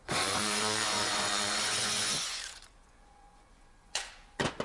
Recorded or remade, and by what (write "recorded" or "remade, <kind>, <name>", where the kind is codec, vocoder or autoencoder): remade, vocoder, Vocos